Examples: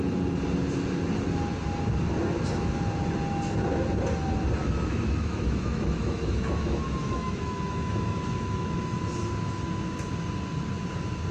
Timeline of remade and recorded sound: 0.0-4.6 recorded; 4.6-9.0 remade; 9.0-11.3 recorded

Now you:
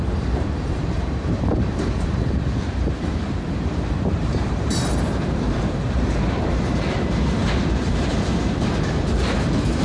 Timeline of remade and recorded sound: 0.0-9.8 remade

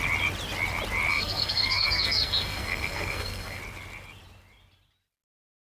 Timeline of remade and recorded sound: 0.0-1.1 recorded; 1.1-3.6 remade; 3.6-5.8 recorded

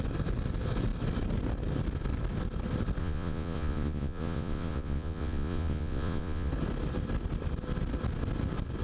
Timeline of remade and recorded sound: 0.0-3.0 recorded; 3.0-6.5 remade; 6.5-8.8 recorded

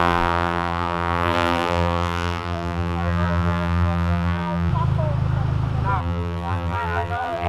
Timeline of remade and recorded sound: 0.0-4.7 remade; 4.7-6.0 recorded; 6.0-7.5 remade